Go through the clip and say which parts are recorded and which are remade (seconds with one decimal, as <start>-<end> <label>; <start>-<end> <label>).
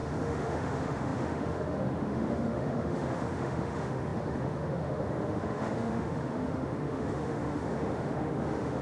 0.0-8.8 remade